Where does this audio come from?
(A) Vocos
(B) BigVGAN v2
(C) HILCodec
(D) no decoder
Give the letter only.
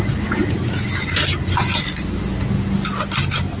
D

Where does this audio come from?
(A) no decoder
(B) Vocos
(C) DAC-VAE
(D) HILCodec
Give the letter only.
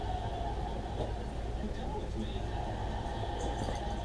A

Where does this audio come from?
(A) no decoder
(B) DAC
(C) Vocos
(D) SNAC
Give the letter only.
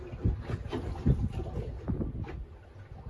A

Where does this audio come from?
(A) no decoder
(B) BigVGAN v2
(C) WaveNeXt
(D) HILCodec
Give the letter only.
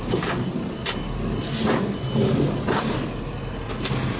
A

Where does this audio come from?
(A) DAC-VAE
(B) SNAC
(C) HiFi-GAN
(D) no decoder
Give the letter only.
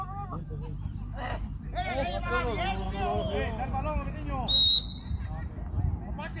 D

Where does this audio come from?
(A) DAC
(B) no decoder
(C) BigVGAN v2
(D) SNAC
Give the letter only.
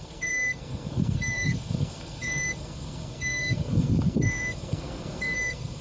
D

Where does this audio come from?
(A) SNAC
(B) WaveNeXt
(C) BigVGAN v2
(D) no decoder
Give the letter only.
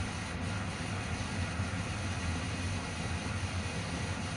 D